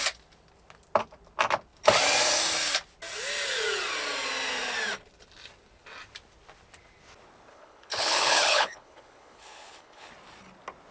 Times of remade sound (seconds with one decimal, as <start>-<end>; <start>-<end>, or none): 7.5-10.1